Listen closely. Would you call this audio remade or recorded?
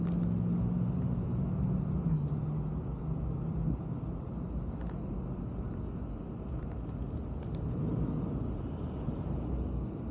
recorded